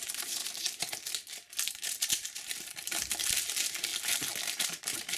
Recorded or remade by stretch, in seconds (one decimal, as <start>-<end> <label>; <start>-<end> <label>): 0.0-0.4 remade; 0.4-1.7 recorded; 1.7-3.9 remade; 3.9-4.6 recorded; 4.6-5.2 remade